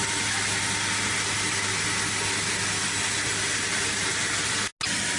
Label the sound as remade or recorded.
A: recorded